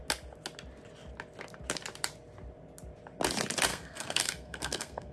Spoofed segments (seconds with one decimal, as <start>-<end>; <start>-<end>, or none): 3.7-5.1